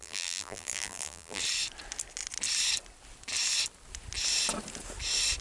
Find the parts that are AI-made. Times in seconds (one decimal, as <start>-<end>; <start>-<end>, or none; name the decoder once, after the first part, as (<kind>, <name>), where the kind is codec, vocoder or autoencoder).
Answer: 0.0-1.4 (vocoder, BigVGAN v2)